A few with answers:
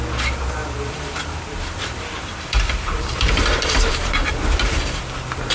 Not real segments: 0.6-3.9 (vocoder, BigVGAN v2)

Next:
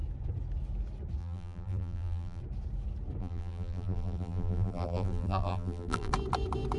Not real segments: 1.2-2.4 (vocoder, BigVGAN v2); 3.2-6.1